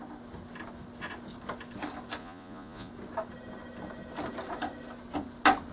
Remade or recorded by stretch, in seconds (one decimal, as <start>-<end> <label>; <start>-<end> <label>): 0.0-2.2 recorded; 2.2-2.9 remade; 2.9-5.7 recorded